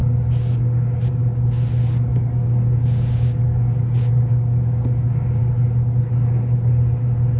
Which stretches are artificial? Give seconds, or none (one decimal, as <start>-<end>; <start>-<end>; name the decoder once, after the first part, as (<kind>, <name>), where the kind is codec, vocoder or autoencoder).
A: 0.0-1.1 (codec, DAC); 2.1-5.4